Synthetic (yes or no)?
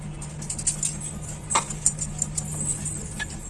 no